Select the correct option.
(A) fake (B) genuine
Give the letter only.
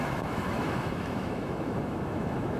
A